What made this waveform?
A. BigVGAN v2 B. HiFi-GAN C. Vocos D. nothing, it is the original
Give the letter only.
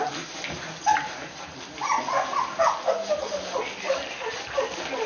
D